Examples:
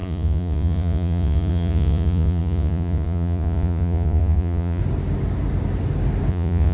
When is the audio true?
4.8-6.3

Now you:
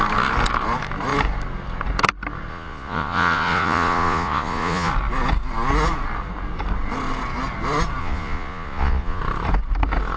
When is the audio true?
0.0-2.5; 4.9-8.0; 9.2-10.2

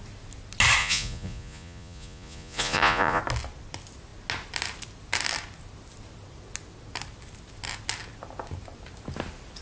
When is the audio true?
0.0-0.8; 3.2-9.6

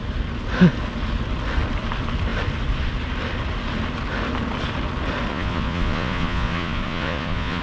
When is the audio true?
0.0-5.3

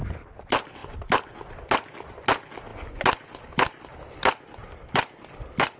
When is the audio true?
0.0-5.8

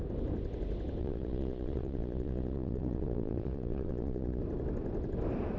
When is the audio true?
0.0-1.0; 4.4-5.6